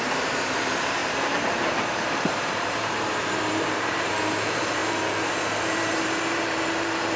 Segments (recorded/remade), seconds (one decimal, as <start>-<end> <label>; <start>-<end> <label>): 0.0-7.2 remade